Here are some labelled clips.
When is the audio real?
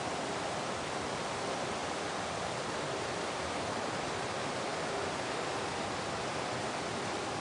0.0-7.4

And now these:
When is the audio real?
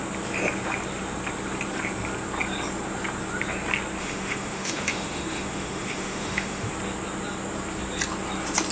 0.0-4.0; 6.7-8.7